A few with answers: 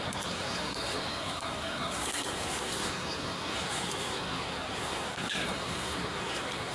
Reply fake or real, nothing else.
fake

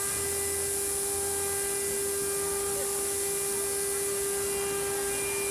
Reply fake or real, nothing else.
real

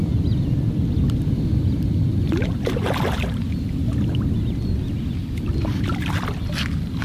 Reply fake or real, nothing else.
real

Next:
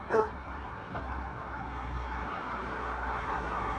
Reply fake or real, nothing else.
fake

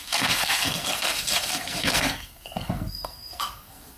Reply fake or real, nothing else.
fake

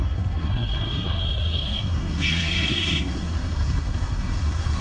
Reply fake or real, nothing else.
fake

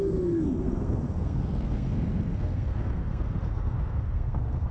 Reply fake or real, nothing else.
fake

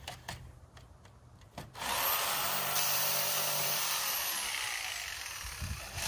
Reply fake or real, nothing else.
real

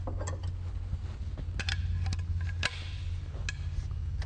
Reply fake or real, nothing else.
real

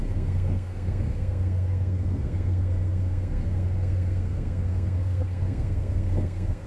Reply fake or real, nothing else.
fake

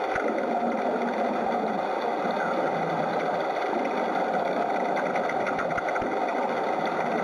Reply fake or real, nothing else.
real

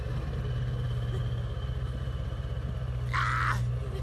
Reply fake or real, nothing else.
real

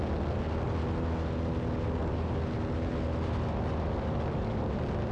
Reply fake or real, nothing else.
real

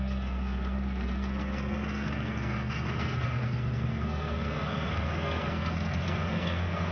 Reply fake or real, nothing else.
fake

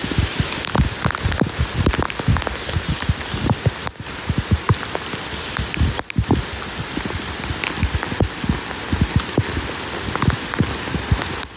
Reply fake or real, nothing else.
real